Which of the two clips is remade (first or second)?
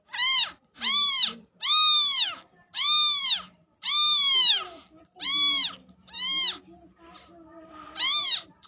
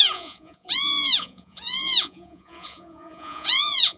second